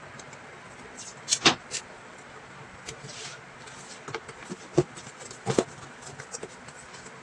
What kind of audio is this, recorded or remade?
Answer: recorded